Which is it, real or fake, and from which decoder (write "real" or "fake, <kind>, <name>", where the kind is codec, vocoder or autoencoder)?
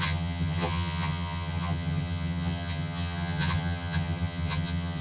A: fake, vocoder, HiFi-GAN